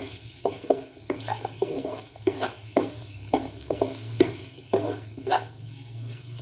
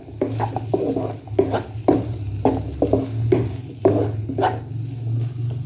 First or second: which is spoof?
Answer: first